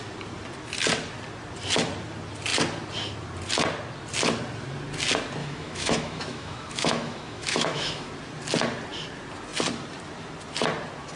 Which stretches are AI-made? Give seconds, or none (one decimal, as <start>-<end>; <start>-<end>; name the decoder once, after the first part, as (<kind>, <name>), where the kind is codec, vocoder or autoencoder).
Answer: 5.4-8.1 (autoencoder, DAC-VAE)